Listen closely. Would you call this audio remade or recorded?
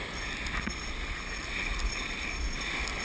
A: recorded